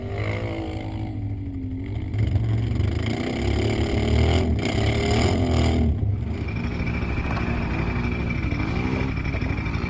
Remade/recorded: recorded